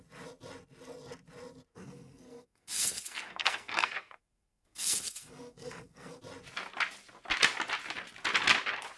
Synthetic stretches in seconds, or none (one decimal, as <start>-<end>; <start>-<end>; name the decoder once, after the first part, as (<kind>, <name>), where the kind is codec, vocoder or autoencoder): 1.7-6.2 (codec, SNAC)